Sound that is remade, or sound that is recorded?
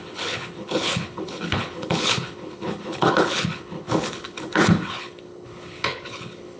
remade